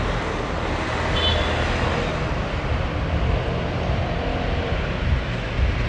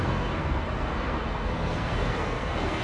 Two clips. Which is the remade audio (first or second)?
second